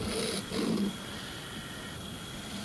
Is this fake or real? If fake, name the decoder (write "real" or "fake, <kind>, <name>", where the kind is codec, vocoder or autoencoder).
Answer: real